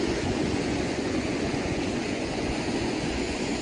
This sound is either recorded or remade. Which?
remade